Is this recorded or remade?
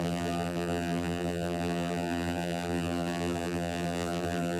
remade